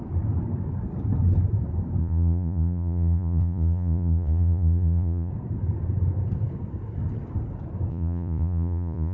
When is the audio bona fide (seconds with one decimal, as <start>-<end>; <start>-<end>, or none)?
0.0-2.0; 5.3-7.9